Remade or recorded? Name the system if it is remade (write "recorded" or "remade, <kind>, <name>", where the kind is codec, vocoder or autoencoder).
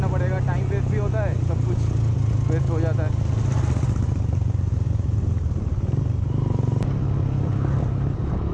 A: recorded